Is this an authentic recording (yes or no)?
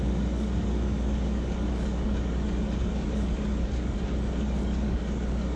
no